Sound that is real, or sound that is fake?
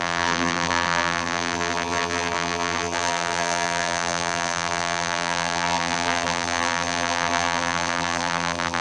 fake